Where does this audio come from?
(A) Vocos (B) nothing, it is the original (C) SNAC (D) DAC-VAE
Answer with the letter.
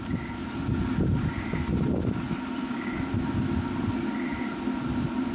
B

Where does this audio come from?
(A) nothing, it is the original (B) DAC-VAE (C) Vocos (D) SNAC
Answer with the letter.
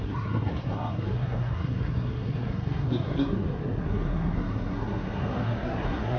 D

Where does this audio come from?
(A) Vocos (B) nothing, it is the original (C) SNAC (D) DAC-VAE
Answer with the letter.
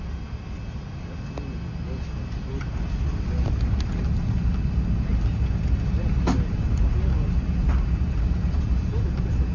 B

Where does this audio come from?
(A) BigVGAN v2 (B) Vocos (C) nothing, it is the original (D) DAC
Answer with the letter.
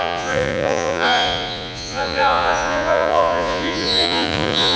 B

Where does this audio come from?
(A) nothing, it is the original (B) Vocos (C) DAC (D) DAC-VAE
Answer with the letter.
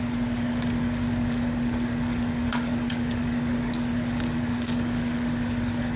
C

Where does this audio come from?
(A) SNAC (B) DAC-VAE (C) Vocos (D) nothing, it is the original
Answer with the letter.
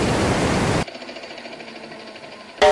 D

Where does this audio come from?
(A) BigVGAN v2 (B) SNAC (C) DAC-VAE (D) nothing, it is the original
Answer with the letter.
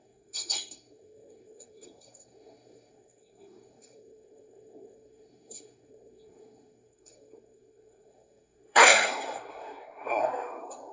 B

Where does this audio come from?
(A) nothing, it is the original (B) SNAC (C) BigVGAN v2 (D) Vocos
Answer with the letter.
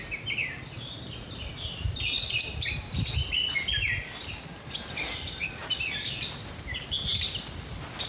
A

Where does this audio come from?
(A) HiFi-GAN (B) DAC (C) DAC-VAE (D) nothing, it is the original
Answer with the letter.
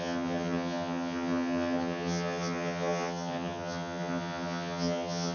A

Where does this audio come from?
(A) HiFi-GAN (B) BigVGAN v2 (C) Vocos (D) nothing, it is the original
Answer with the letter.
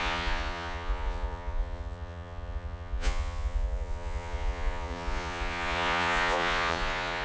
C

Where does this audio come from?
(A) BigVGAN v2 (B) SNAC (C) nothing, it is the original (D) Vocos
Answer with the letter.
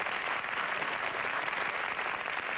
C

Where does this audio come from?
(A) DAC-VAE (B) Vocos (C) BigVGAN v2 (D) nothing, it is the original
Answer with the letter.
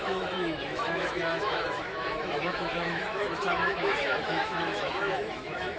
A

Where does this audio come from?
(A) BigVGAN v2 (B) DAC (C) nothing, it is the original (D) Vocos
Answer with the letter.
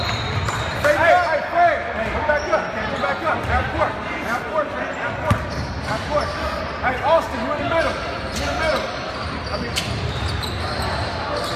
C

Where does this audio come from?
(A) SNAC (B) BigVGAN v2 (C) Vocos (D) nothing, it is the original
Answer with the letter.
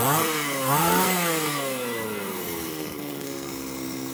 A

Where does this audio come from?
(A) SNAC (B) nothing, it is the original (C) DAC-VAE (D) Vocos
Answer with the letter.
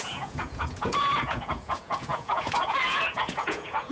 D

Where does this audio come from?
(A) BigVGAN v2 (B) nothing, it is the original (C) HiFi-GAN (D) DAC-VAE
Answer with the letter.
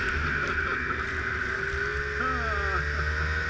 B